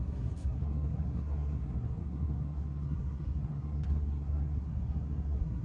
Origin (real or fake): fake